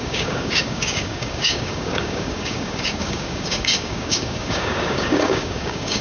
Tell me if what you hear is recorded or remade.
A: remade